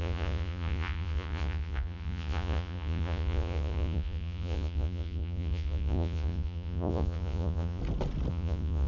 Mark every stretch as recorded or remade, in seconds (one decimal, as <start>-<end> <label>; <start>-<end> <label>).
0.0-7.8 remade; 7.8-8.3 recorded; 8.3-8.9 remade